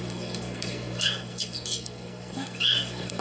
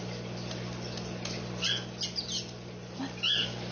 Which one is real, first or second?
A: second